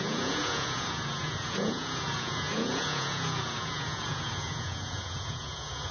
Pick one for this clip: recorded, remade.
remade